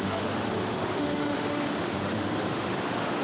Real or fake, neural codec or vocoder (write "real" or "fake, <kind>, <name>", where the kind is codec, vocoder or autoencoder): fake, autoencoder, DAC-VAE